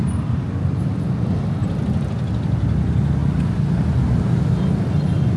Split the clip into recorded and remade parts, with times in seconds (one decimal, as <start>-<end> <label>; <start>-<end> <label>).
0.0-5.4 recorded